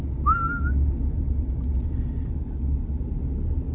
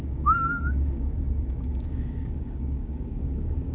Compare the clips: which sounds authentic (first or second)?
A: first